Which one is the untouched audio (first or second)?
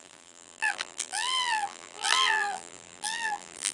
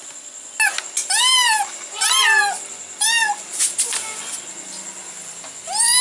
second